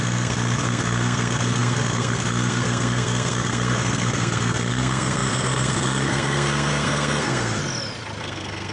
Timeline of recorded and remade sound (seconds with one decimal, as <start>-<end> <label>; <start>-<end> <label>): 0.0-7.6 remade; 7.6-8.2 recorded; 8.2-8.7 remade